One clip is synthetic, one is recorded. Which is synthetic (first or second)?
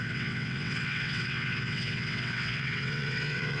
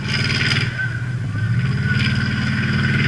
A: first